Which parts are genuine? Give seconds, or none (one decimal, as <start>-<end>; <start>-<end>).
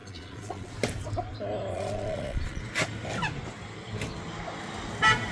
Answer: 0.7-1.7; 2.6-5.3